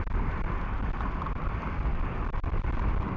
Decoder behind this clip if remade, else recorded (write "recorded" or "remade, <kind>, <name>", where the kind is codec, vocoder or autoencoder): recorded